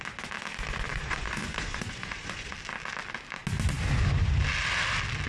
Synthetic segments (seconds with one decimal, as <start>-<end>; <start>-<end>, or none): 0.9-2.5